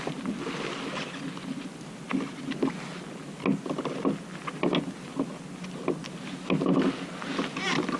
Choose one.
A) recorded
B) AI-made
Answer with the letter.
A